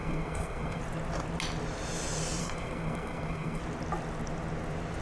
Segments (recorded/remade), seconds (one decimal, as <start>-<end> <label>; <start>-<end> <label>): 0.0-0.8 remade; 0.8-2.4 recorded; 2.4-3.6 remade; 3.6-5.0 recorded